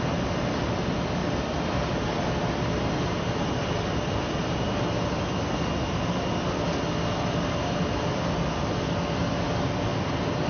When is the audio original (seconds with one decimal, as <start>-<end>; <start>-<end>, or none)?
0.0-1.2; 4.8-10.5